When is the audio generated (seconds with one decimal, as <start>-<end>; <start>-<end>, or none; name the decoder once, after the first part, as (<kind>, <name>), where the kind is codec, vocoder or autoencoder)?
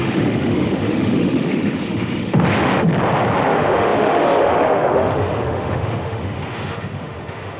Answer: 0.0-2.9 (autoencoder, DAC-VAE); 3.4-7.6